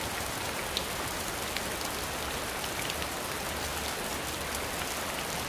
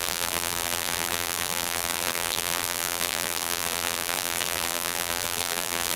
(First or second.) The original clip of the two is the first